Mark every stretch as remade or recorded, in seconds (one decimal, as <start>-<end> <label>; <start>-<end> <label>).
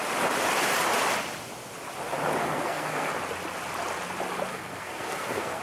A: 0.0-2.4 recorded; 2.4-3.1 remade; 3.1-4.5 recorded; 4.5-5.6 remade